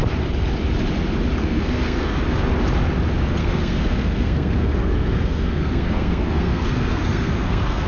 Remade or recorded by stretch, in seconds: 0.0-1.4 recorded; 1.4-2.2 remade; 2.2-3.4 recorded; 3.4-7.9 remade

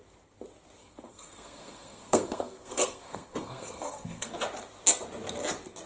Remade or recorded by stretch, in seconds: 0.0-0.8 recorded; 0.8-4.3 remade; 4.3-5.9 recorded

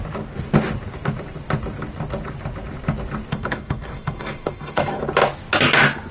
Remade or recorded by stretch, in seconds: 0.0-3.3 recorded; 3.3-5.0 remade; 5.0-6.1 recorded